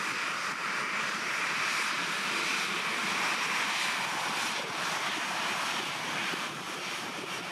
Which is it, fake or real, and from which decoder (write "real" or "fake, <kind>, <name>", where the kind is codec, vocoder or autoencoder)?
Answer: fake, vocoder, BigVGAN v2